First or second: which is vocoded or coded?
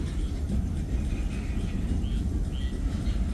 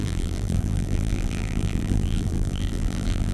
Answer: second